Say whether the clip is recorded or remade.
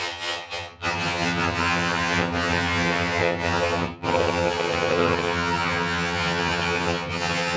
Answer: remade